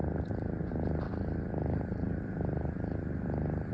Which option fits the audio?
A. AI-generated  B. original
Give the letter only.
B